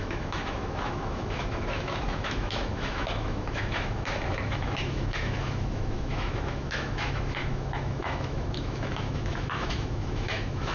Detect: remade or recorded remade